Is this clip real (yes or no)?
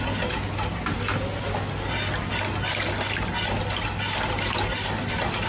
yes